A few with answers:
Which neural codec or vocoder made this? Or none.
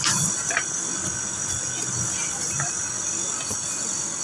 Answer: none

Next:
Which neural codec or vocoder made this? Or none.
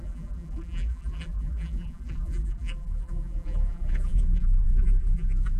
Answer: vocoder, BigVGAN v2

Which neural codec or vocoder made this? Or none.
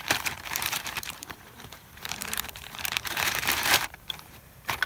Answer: vocoder, BigVGAN v2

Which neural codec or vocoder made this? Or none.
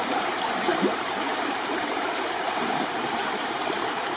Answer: vocoder, BigVGAN v2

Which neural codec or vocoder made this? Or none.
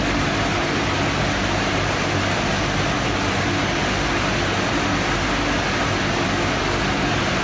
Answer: none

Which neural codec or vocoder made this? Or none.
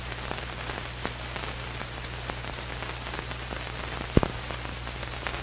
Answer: vocoder, BigVGAN v2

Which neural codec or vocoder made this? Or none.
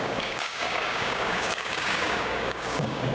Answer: codec, DAC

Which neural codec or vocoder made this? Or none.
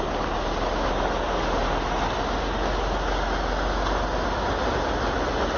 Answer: none